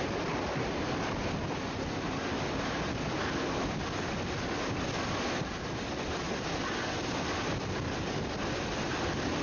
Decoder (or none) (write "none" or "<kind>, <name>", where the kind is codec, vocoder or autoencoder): none